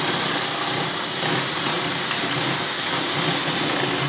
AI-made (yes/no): no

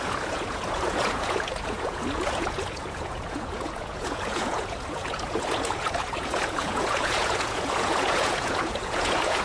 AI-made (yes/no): yes